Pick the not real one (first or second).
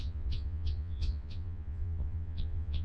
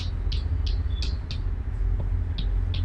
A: first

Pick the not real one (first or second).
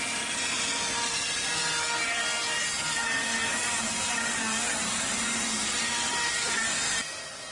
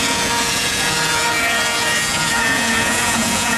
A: second